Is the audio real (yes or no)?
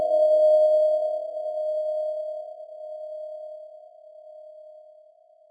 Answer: yes